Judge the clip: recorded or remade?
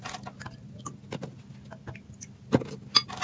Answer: recorded